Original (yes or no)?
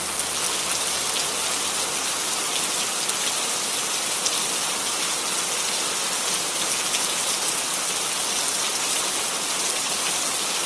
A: yes